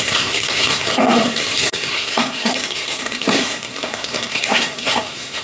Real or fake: fake